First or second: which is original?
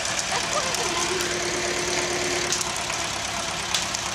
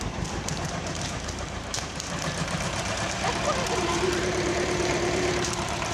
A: first